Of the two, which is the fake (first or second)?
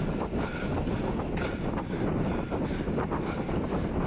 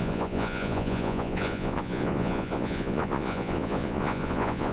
second